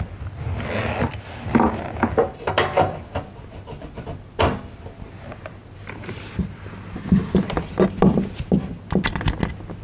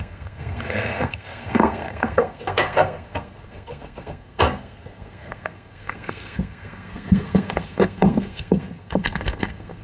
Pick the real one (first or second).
first